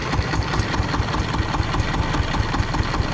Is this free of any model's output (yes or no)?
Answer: yes